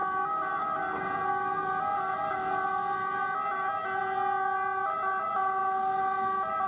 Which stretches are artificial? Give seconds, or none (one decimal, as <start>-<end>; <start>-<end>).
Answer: none